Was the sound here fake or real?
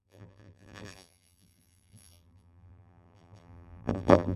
fake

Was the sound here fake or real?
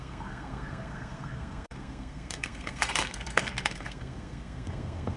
fake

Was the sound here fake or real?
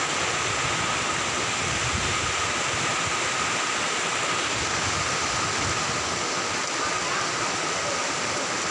real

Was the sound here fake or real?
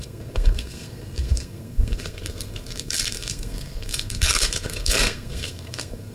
fake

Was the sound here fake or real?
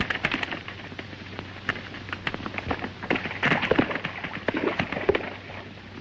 real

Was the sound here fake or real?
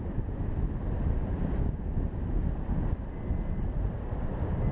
real